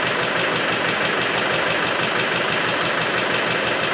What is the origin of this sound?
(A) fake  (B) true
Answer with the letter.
B